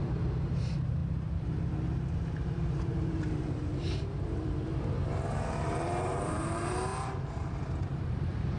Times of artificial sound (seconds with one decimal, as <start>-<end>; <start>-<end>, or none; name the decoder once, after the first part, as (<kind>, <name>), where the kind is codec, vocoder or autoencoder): 0.0-8.6 (vocoder, BigVGAN v2)